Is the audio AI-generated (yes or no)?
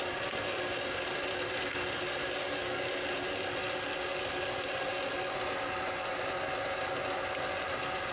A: no